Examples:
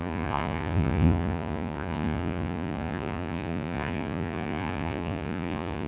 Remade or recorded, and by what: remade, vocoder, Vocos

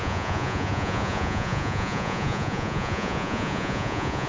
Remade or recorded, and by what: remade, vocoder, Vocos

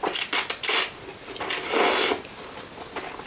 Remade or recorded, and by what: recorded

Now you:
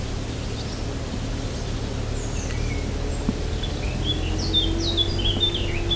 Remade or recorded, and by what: recorded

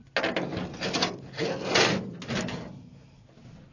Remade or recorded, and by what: recorded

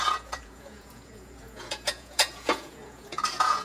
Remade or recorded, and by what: remade, vocoder, Vocos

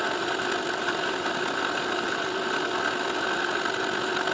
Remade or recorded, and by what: recorded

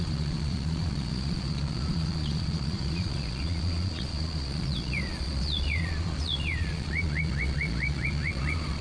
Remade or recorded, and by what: remade, vocoder, Vocos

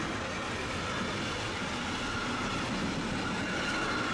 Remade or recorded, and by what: recorded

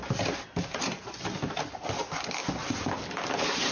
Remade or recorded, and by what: recorded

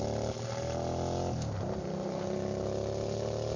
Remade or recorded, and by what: recorded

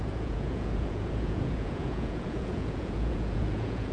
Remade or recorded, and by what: remade, vocoder, Vocos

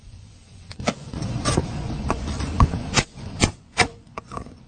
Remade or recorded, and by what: remade, vocoder, Vocos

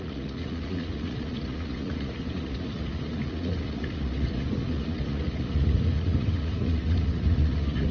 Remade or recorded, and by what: remade, vocoder, Vocos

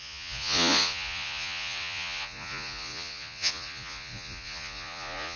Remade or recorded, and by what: remade, vocoder, Vocos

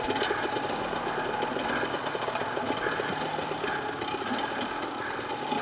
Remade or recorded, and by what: recorded